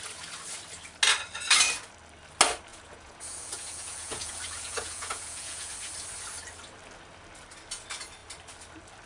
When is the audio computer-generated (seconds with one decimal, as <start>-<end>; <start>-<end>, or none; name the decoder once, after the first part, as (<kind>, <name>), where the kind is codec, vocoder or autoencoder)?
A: 2.7-5.7 (vocoder, Vocos)